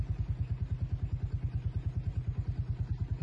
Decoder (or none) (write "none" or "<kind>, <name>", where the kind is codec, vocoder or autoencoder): none